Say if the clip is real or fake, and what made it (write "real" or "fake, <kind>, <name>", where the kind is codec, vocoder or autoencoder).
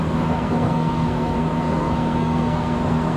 fake, codec, SNAC